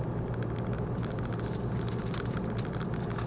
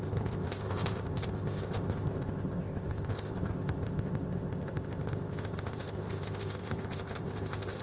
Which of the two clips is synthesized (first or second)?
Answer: second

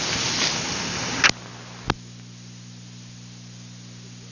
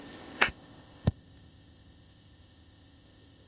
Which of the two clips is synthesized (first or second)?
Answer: second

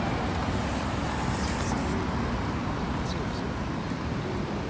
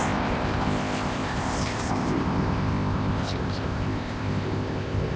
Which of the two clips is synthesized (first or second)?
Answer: second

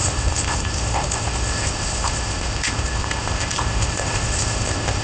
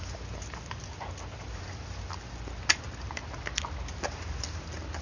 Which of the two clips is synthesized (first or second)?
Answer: first